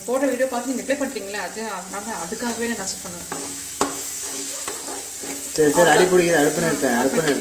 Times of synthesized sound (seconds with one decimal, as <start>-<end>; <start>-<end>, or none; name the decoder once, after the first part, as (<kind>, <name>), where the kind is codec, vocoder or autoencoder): 2.2-4.6 (autoencoder, DAC-VAE)